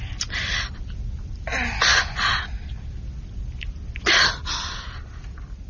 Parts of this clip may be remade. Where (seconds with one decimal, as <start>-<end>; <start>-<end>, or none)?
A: none